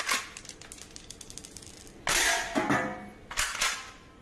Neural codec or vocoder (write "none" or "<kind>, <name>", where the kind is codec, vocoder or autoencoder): none